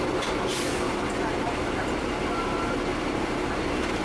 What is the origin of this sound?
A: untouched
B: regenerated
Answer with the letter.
A